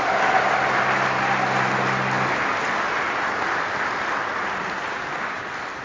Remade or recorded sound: recorded